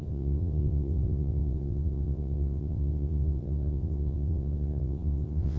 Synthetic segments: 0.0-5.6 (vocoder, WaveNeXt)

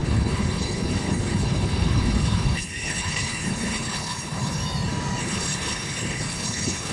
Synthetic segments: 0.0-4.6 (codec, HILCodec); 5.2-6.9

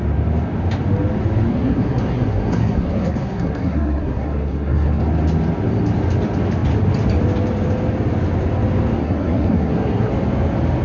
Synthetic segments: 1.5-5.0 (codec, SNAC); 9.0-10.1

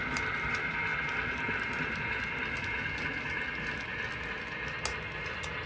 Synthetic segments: none